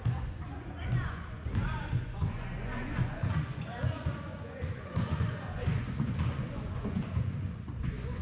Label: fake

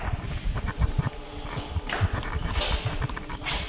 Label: real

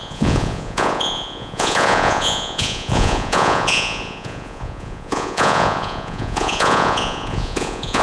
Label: fake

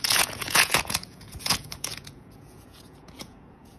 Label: fake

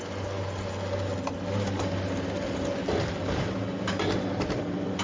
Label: real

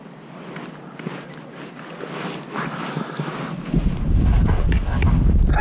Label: real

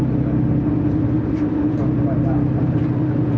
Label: real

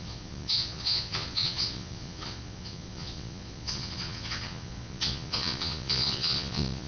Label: fake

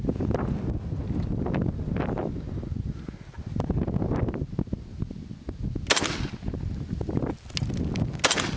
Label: real